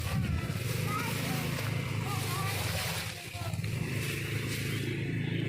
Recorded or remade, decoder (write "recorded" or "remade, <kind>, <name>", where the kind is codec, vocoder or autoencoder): recorded